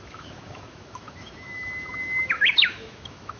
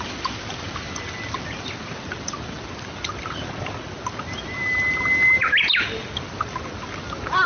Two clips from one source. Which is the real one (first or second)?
second